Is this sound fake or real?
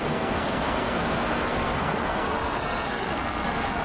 fake